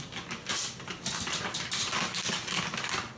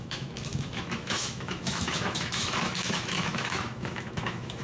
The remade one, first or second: second